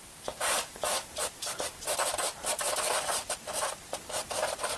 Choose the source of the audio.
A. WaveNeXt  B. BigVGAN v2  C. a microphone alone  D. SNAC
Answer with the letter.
B